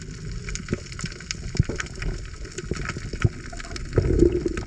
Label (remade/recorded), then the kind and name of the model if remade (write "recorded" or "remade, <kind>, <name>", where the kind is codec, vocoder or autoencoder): recorded